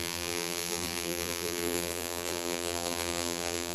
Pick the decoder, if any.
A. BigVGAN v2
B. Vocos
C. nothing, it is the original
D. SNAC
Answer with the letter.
A